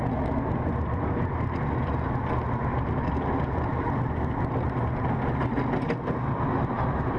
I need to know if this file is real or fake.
real